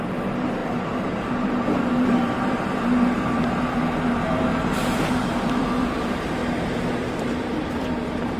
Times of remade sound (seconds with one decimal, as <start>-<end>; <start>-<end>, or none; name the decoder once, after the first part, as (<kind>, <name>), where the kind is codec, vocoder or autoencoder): 0.0-6.4 (vocoder, BigVGAN v2); 7.2-8.4